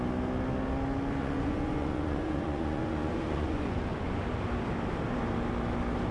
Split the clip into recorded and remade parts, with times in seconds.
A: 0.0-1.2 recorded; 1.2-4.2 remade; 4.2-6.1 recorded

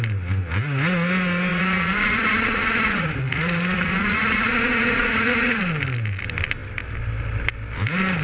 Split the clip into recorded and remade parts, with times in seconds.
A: 0.0-1.5 recorded; 1.5-5.6 remade; 5.6-8.2 recorded

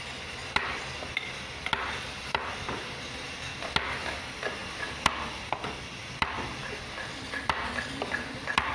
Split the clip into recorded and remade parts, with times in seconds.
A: 0.0-8.7 recorded

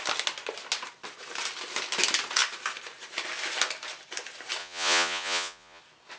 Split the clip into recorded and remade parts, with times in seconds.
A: 0.0-4.6 recorded; 4.6-5.8 remade; 5.8-6.2 recorded

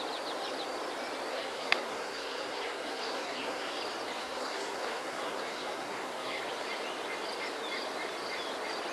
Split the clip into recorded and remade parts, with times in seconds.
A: 0.0-1.3 recorded; 1.3-3.8 remade; 3.8-4.2 recorded; 4.2-6.4 remade; 6.4-8.9 recorded

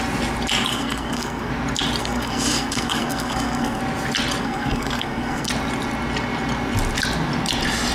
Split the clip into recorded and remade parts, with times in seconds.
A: 0.0-0.7 recorded; 0.7-1.5 remade; 1.5-2.0 recorded; 2.0-3.8 remade; 3.8-4.4 recorded; 4.4-5.5 remade; 5.5-7.9 recorded